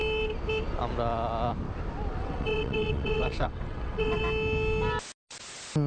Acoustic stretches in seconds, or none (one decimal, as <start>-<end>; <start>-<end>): 0.0-2.2; 4.2-5.9